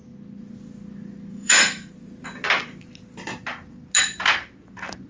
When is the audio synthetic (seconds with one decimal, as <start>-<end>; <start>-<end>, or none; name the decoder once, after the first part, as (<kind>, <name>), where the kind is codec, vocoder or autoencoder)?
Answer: 1.3-1.9 (autoencoder, DAC-VAE)